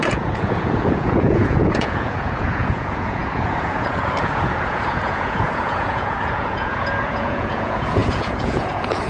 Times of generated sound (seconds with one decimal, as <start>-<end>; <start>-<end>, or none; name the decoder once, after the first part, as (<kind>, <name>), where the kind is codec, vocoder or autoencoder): 0.0-9.1 (vocoder, Vocos)